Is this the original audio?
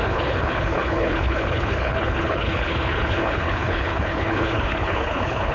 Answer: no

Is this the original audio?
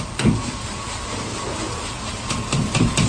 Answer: yes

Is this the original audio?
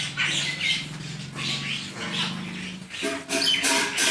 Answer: yes